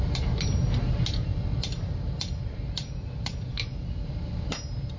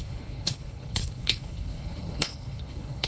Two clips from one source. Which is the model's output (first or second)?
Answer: second